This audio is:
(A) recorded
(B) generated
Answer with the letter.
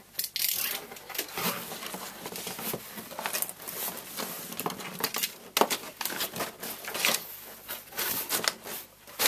A